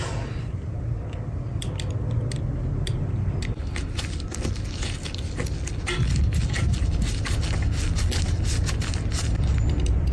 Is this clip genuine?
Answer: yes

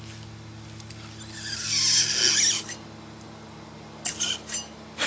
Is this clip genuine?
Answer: yes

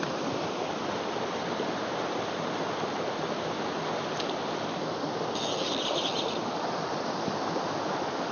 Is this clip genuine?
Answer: no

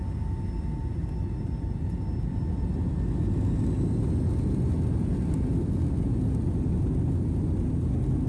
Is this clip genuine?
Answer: yes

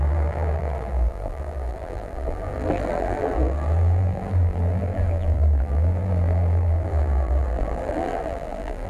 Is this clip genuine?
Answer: no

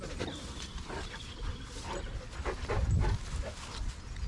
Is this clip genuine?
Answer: yes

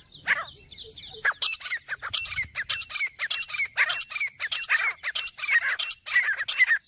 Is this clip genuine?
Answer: yes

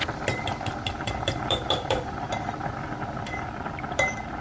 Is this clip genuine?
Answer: no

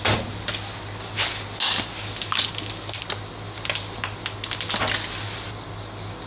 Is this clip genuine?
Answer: yes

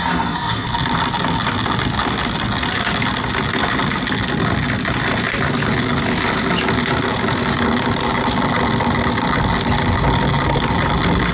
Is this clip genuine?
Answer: yes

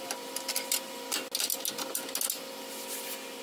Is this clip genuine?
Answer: yes